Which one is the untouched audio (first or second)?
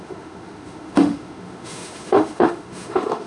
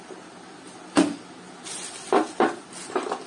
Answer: second